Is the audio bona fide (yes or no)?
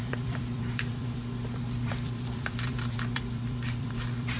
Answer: no